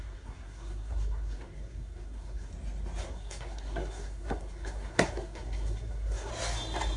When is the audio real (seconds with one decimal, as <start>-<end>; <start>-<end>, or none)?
2.5-3.0; 6.3-7.0